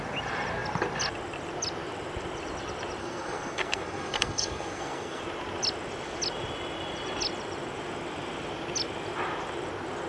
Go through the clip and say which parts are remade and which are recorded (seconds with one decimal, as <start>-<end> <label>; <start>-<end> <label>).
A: 0.0-3.0 recorded; 3.0-5.2 remade; 5.2-10.1 recorded